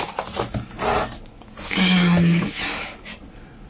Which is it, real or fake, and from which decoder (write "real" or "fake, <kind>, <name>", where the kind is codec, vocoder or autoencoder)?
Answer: real